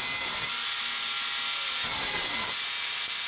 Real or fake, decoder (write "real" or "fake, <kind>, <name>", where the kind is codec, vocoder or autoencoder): real